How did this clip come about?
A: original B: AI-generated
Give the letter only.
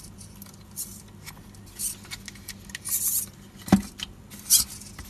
A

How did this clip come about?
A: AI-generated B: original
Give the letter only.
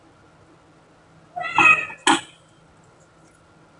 B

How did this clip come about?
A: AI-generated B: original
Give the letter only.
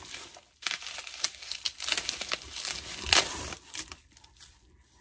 B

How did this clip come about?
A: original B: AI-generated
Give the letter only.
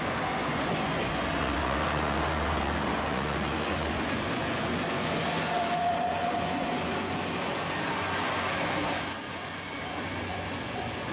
B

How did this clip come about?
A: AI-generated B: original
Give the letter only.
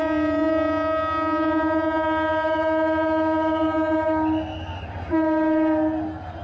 B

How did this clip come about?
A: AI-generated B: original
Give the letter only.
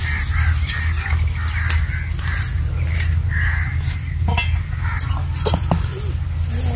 B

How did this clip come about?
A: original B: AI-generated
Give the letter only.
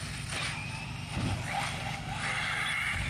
A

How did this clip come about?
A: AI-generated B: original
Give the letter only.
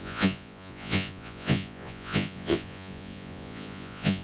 A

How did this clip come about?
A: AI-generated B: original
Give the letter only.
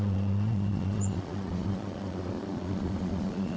A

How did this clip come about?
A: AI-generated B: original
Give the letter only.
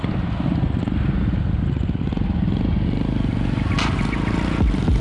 B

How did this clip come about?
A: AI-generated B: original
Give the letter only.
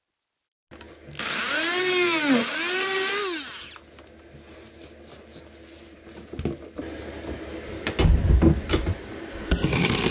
B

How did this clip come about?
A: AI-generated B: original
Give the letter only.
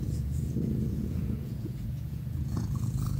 A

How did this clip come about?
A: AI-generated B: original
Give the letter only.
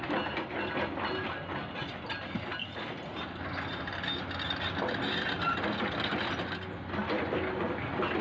B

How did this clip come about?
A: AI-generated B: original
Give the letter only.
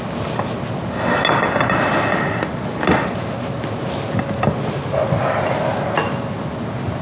B